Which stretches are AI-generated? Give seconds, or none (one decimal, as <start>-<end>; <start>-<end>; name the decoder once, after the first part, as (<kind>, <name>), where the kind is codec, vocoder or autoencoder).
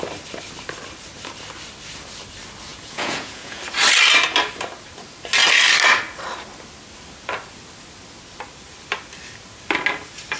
2.7-3.6 (vocoder, Vocos)